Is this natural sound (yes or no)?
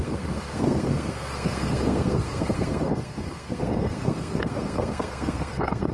no